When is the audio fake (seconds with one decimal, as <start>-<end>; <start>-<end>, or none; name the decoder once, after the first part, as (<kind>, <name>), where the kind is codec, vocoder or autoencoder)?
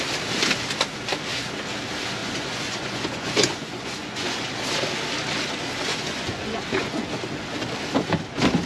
2.2-4.5 (vocoder, Vocos); 5.9-7.1